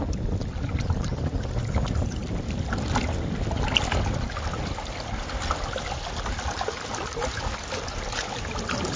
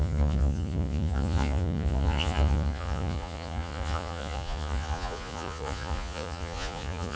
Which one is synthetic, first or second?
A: second